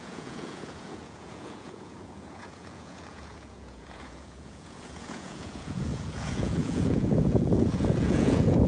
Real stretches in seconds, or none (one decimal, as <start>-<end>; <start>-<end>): none